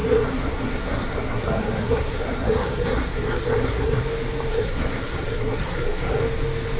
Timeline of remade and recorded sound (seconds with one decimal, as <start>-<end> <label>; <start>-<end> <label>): 0.0-4.0 remade; 4.0-4.5 recorded; 4.5-6.2 remade; 6.2-6.8 recorded